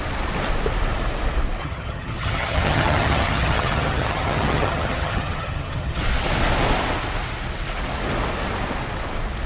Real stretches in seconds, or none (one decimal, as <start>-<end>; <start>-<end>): 0.0-1.6; 6.0-9.5